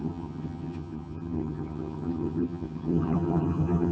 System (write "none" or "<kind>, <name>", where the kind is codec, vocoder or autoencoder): vocoder, HiFi-GAN